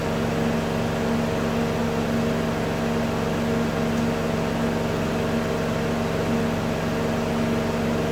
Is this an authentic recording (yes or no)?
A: yes